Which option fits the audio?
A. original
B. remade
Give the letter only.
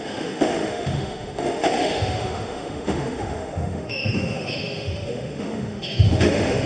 B